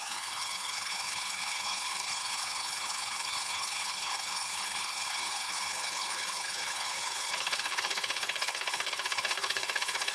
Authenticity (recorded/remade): remade